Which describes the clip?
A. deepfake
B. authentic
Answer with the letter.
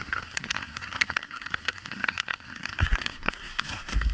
A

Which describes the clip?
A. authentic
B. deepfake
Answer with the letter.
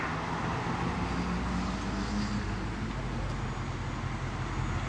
A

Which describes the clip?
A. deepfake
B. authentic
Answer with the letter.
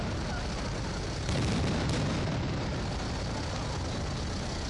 B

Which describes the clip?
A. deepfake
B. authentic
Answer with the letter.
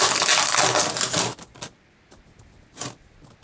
B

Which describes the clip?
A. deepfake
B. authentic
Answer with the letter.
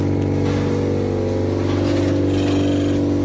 B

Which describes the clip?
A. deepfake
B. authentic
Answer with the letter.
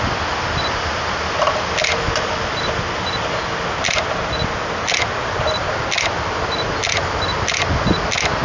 B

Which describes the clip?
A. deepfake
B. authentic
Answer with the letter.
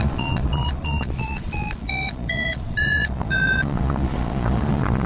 A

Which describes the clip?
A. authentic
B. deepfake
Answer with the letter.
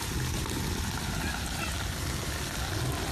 A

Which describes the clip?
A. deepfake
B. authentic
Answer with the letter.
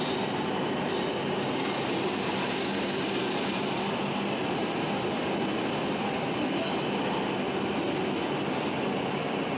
B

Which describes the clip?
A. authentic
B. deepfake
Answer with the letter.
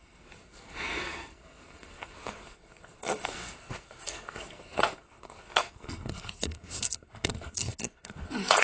B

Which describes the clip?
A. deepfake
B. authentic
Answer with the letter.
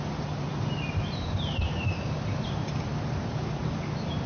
A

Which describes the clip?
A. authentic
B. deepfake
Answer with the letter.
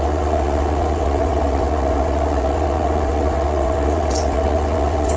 B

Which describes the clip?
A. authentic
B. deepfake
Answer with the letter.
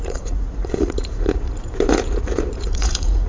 B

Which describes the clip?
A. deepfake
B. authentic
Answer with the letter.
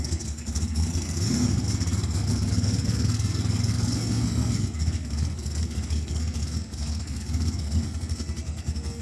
A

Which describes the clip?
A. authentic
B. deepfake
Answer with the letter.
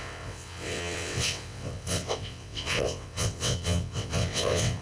B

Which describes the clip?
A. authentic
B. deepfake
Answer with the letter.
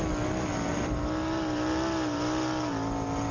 A